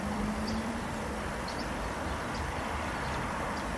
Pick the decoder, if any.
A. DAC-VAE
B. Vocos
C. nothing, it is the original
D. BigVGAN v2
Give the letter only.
D